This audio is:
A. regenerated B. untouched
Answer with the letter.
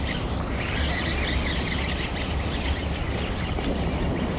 B